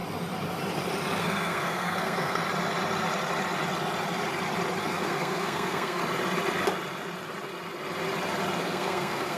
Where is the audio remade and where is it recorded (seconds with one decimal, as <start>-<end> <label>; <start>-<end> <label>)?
0.0-1.2 recorded; 1.2-2.4 remade; 2.4-4.8 recorded; 4.8-6.0 remade; 6.0-8.6 recorded; 8.6-9.4 remade